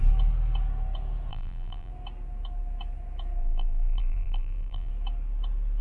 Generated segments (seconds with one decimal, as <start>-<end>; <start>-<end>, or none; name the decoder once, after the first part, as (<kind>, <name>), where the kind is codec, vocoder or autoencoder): 1.3-1.9 (vocoder, BigVGAN v2); 3.4-4.9